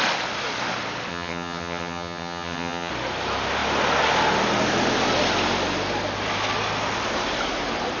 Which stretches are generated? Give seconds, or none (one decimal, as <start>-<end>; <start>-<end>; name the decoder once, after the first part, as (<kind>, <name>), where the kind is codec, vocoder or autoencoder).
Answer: 1.1-2.9 (vocoder, HiFi-GAN)